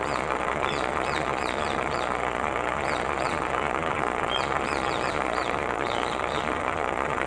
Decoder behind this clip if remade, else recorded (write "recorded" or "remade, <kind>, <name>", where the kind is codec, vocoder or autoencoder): remade, vocoder, Vocos